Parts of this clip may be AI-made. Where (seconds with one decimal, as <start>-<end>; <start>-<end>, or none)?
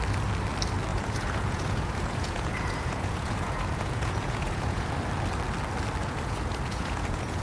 0.9-4.9; 6.0-7.4